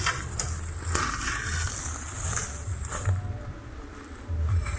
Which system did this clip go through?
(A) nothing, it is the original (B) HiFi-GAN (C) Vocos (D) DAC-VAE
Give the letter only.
A